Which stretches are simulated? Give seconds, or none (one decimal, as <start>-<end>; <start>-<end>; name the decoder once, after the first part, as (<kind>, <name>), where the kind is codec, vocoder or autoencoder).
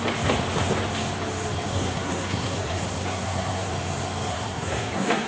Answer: 1.7-3.7 (codec, SNAC); 4.3-5.3